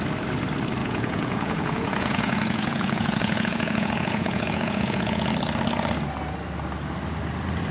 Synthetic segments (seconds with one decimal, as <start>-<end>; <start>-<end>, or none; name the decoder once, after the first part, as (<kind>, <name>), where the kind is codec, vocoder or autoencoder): 0.8-5.3 (vocoder, Vocos)